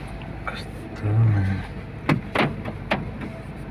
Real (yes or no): yes